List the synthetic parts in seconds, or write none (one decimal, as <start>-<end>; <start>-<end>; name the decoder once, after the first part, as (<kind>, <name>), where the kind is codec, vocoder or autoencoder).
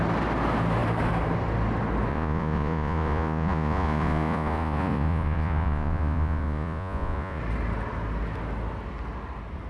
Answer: 2.1-7.4 (vocoder, Vocos)